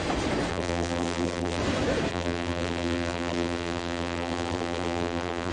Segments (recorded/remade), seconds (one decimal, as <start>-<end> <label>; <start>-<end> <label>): 0.0-0.5 recorded; 0.5-1.6 remade; 1.6-2.1 recorded; 2.1-5.5 remade